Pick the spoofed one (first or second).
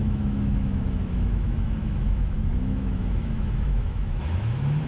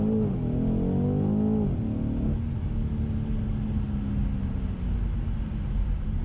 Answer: first